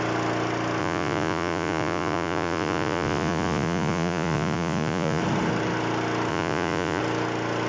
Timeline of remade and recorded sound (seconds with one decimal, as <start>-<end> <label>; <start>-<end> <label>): 0.0-0.8 recorded; 0.8-5.2 remade; 5.2-6.3 recorded; 6.3-7.0 remade; 7.0-7.7 recorded